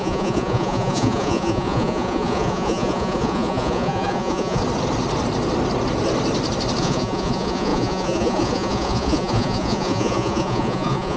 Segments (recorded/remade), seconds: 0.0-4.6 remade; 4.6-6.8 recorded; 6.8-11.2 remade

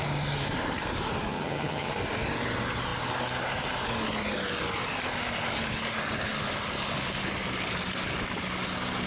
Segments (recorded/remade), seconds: 0.0-1.3 recorded; 1.3-1.9 remade; 1.9-9.1 recorded

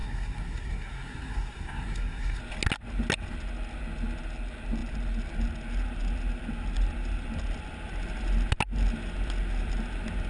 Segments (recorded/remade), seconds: 0.0-2.4 remade; 2.4-10.3 recorded

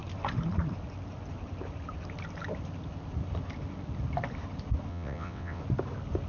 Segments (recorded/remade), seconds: 0.0-4.9 recorded; 4.9-5.6 remade; 5.6-6.3 recorded

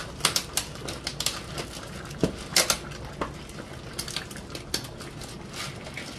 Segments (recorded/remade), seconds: 0.0-6.2 recorded

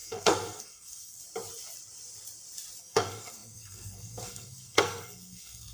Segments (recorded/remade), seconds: 0.0-1.2 remade; 1.2-2.8 recorded; 2.8-5.7 remade

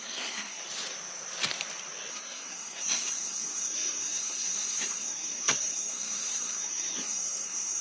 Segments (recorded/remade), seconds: 0.0-0.6 remade; 0.6-2.1 recorded; 2.1-7.8 remade